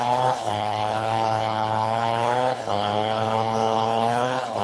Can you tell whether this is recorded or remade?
remade